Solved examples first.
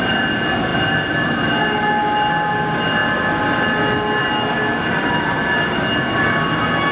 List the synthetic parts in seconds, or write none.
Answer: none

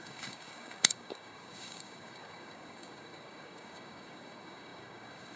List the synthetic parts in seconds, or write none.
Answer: 0.0-5.4 (codec, DAC)